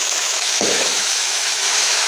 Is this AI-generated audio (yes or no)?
yes